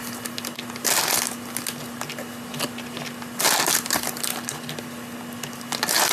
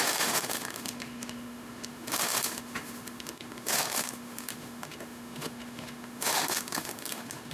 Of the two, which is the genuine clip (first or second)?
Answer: first